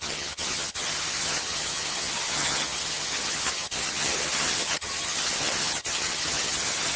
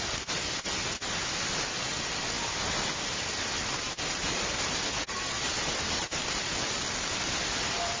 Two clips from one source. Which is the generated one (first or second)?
first